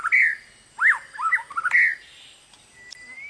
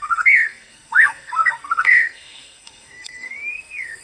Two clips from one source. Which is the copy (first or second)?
second